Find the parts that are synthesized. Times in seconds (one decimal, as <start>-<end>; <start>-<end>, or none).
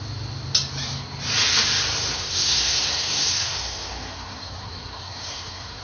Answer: 2.1-5.8